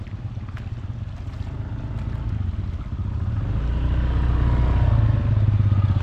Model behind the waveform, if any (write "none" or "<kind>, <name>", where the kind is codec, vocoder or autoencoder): none